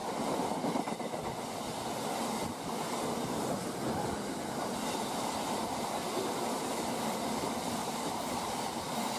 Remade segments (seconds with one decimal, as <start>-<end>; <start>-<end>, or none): 7.8-8.7